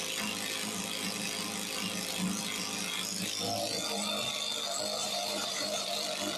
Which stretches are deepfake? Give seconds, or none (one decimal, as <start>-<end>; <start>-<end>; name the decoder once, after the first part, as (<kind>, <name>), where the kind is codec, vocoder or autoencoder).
5.0-5.9 (vocoder, BigVGAN v2)